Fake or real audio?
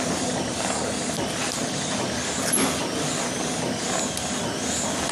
real